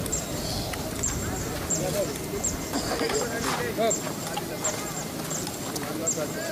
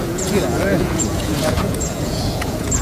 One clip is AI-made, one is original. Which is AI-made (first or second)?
second